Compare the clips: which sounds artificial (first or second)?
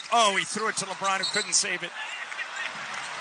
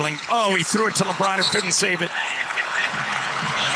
second